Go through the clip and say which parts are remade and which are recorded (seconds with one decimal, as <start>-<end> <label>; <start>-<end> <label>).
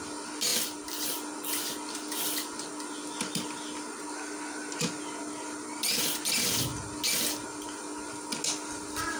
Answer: 0.0-9.2 recorded